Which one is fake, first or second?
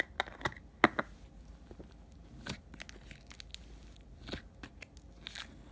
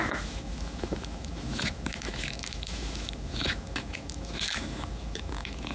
second